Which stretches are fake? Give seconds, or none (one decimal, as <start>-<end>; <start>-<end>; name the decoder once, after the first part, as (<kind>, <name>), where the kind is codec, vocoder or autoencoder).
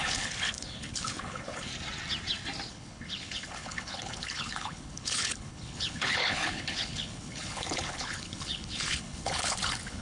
0.0-1.7 (codec, HILCodec); 2.7-10.0